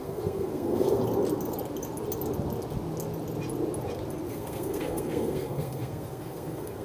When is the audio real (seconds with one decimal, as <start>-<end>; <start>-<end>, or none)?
1.0-4.3